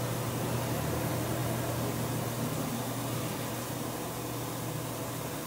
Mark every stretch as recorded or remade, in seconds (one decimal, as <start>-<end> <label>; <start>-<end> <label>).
0.0-5.5 recorded